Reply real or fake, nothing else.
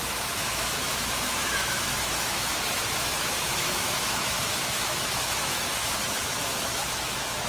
fake